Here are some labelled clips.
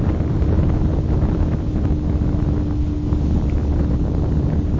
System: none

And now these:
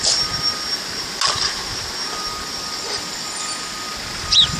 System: none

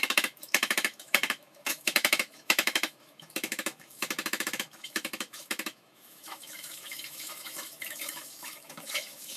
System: autoencoder, DAC-VAE